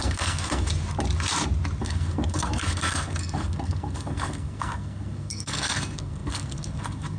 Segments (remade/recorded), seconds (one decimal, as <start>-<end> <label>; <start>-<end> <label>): 0.0-0.7 remade; 0.7-1.8 recorded; 1.8-7.2 remade